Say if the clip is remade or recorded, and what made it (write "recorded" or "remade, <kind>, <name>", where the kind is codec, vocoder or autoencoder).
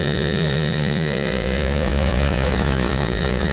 remade, vocoder, Vocos